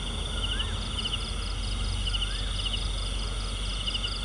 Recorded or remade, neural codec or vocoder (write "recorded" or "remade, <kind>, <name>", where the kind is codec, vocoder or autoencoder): recorded